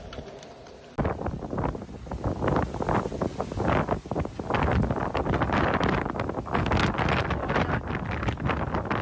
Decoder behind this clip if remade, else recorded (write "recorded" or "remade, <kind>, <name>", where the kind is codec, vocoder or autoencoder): recorded